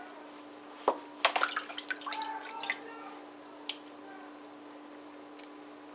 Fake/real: real